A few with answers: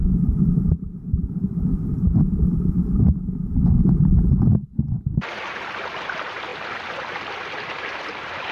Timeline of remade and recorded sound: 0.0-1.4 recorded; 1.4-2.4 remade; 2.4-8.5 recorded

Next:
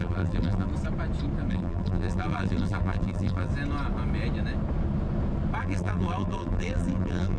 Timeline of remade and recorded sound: 0.0-0.7 remade; 0.7-1.5 recorded; 1.5-3.5 remade; 3.5-5.6 recorded; 5.6-7.4 remade

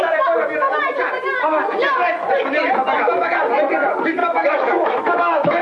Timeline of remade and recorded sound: 0.0-4.2 recorded; 4.2-5.6 remade

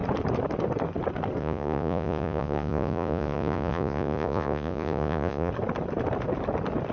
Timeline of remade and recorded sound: 0.0-1.4 recorded; 1.4-5.5 remade; 5.5-6.9 recorded

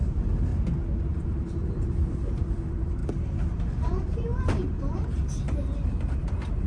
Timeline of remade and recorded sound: 0.0-0.5 remade; 0.5-1.1 recorded; 1.1-3.0 remade; 3.0-3.6 recorded; 3.6-6.7 remade

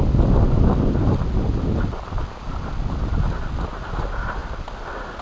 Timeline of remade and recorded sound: 0.0-5.2 recorded

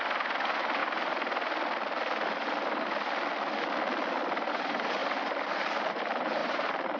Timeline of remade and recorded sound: 0.0-0.8 remade; 0.8-4.5 recorded; 4.5-5.0 remade; 5.0-5.9 recorded; 5.9-7.0 remade

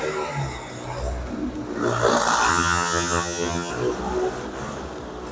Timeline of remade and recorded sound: 0.0-2.5 recorded; 2.5-3.7 remade; 3.7-5.3 recorded